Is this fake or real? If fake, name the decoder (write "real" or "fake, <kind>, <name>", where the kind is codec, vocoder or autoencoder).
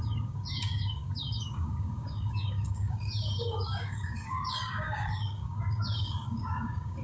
fake, codec, DAC